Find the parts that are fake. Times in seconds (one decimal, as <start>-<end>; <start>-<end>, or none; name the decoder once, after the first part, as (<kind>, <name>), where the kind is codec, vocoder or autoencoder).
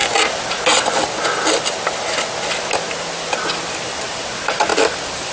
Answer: none